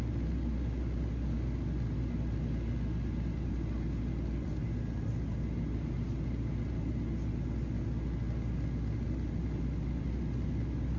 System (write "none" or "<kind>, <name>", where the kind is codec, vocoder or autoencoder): none